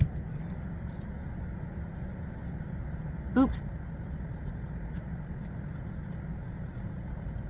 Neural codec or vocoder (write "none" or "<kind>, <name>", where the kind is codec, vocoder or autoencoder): none